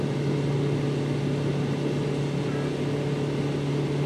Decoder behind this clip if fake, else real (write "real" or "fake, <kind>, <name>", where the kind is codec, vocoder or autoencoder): real